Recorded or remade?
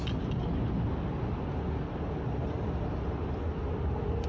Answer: recorded